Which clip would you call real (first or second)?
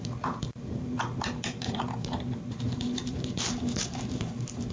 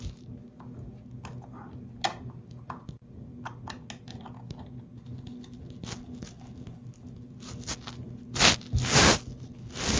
second